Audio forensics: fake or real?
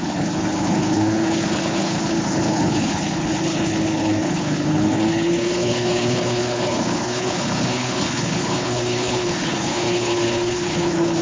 fake